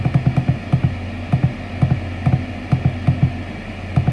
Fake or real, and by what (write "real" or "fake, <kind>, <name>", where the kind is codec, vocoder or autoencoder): real